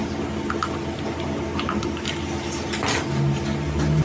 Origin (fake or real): real